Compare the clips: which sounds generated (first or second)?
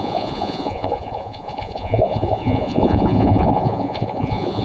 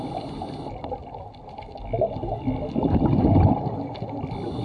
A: first